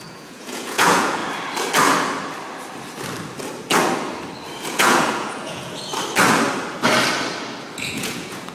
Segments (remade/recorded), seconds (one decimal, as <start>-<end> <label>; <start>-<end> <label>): 0.0-1.2 remade; 1.2-4.7 recorded; 4.7-5.9 remade; 5.9-7.8 recorded; 7.8-8.5 remade